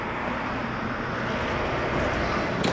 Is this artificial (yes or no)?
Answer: no